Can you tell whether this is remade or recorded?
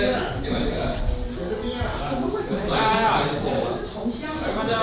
recorded